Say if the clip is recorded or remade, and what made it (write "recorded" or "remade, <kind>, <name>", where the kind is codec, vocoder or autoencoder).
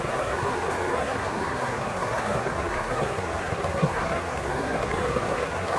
remade, codec, SNAC